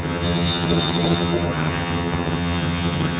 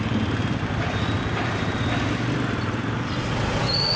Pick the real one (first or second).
second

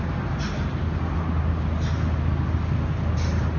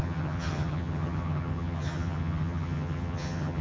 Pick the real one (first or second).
first